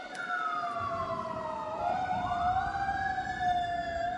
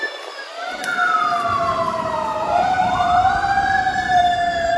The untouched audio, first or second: first